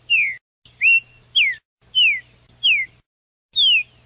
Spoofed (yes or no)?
no